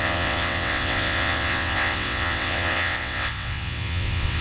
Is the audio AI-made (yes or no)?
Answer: yes